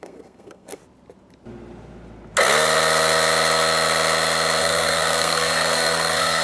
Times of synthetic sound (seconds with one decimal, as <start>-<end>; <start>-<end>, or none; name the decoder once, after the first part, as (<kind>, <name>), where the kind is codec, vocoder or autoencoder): 0.0-0.8 (codec, SNAC); 4.6-6.4